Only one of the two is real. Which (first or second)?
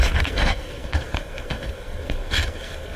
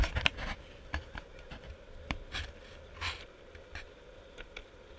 second